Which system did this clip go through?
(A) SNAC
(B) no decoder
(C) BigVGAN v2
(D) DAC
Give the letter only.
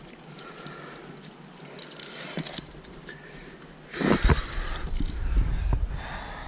B